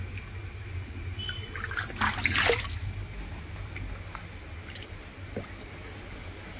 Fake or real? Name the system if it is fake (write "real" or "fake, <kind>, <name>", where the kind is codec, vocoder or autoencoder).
real